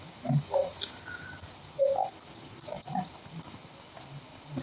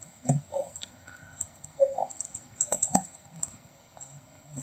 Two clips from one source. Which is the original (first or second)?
first